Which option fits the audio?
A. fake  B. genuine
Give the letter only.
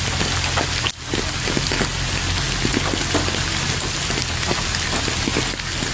B